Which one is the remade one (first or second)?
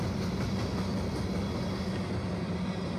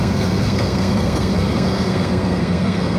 second